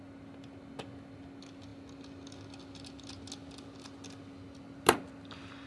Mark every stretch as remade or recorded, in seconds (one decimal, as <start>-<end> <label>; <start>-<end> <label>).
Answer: 0.0-5.7 recorded